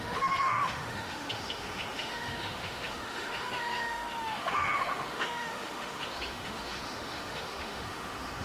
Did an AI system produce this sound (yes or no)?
yes